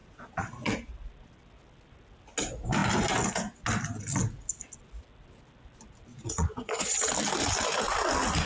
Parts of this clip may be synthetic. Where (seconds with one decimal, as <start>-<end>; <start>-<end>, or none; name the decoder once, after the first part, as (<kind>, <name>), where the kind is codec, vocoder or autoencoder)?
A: 0.0-0.7 (vocoder, Vocos); 6.1-7.1